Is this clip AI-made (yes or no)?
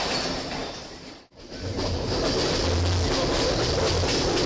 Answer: no